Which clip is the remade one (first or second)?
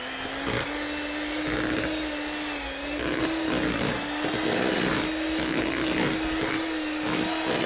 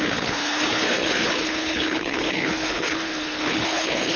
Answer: second